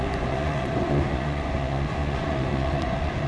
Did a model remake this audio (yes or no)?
yes